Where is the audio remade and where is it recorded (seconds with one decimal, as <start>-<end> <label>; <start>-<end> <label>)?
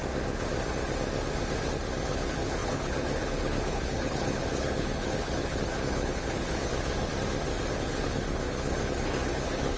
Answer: 0.0-2.1 recorded; 2.1-7.1 remade; 7.1-7.7 recorded; 7.7-9.8 remade